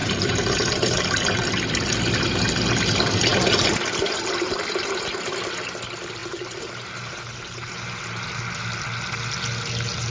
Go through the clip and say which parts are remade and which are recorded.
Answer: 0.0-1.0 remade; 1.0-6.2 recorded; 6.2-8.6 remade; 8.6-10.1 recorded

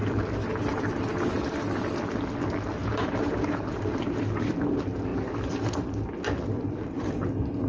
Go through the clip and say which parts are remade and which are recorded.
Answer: 0.0-2.8 recorded; 2.8-4.2 remade; 4.2-7.7 recorded

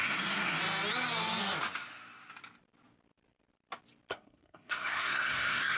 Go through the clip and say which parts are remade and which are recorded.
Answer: 0.0-0.6 remade; 0.6-4.1 recorded; 4.1-5.8 remade

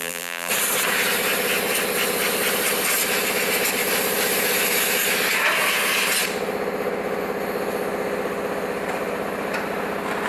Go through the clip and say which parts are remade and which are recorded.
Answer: 0.0-0.5 remade; 0.5-10.3 recorded

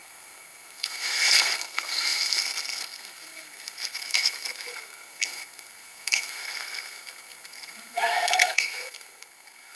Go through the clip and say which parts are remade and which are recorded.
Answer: 0.0-9.7 remade